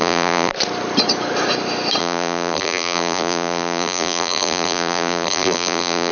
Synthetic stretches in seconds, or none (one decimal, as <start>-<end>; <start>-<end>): 0.0-0.5; 2.0-6.1